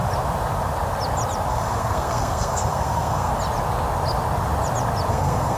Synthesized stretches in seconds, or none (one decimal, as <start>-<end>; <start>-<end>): 1.5-3.3; 5.1-5.6